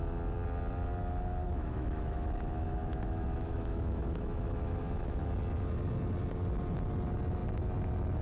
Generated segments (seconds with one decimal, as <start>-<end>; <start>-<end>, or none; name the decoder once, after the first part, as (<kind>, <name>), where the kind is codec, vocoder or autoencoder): 1.4-5.3 (autoencoder, DAC-VAE)